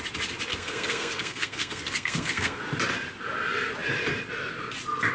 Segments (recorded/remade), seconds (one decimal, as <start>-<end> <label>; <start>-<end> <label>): 0.0-0.5 recorded; 0.5-2.6 remade; 2.6-5.1 recorded